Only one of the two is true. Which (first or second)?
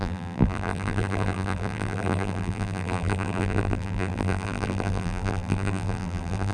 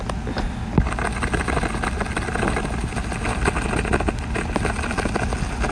second